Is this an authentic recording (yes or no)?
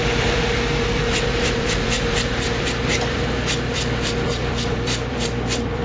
no